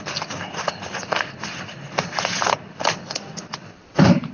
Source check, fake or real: fake